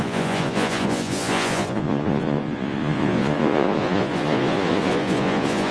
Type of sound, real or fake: fake